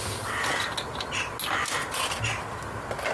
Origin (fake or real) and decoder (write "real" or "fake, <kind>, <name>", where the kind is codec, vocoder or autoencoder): real